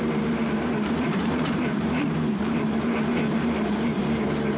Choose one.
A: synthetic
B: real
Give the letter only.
A